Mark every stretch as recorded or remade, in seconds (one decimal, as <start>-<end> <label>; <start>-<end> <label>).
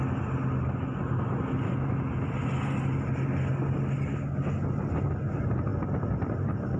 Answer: 0.0-6.8 recorded